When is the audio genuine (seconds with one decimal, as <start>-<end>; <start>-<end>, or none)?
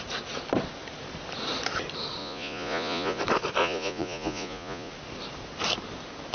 0.0-2.2; 3.2-3.6; 4.9-6.3